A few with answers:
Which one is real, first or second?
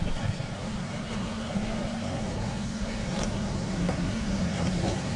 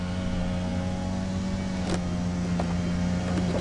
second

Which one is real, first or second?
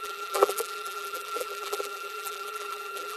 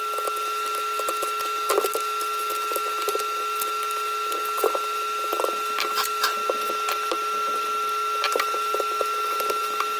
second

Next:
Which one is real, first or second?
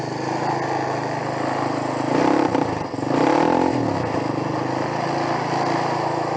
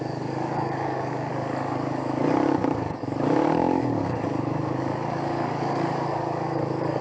first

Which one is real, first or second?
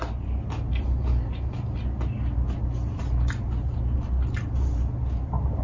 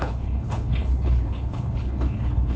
first